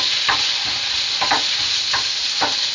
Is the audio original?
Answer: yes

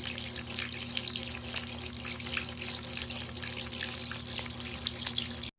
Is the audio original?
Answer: yes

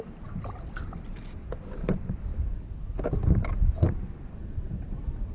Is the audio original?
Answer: yes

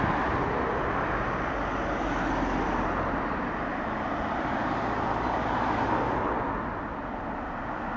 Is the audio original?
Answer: yes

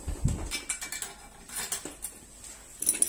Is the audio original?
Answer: yes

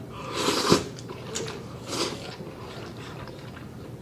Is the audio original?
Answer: no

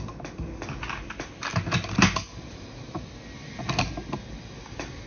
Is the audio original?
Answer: yes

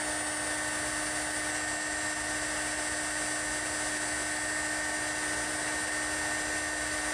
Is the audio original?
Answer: yes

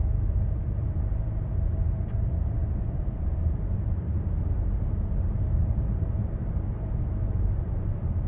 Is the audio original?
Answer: no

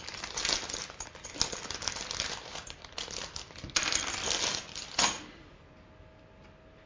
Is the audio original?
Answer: yes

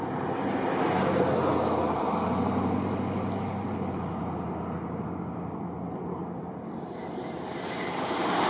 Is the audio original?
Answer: yes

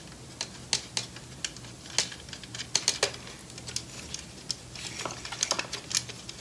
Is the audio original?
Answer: yes